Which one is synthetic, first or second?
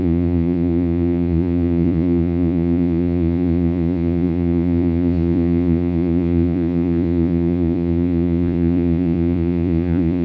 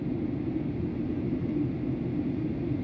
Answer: first